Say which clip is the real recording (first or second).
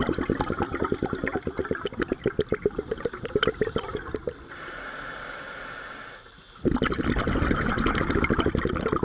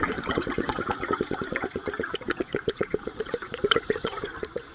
first